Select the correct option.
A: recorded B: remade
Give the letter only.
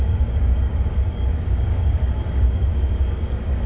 B